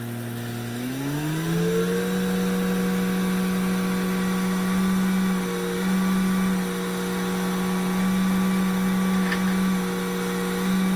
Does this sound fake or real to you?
real